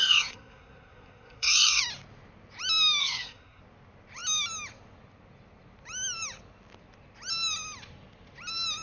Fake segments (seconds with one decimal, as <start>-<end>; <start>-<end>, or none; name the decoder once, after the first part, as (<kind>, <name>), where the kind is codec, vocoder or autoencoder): 0.0-1.8 (codec, SNAC); 3.0-3.6